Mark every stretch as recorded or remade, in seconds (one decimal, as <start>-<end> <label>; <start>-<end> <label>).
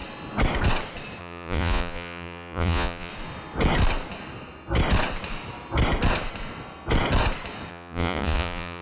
0.0-1.2 recorded; 1.2-3.1 remade; 3.1-7.7 recorded; 7.7-8.8 remade